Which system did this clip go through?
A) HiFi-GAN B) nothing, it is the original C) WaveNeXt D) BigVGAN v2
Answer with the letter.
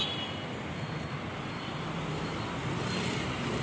B